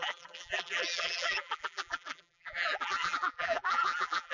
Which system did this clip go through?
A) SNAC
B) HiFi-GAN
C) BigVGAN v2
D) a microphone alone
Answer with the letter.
C